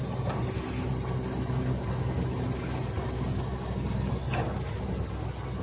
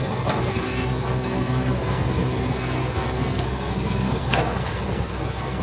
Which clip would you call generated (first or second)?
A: second